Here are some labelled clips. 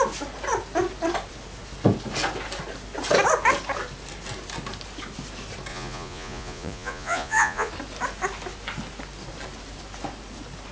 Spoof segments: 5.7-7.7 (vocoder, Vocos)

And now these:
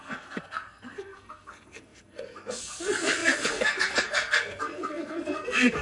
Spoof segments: 0.0-5.8 (codec, SNAC)